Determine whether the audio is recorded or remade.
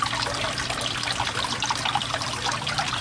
recorded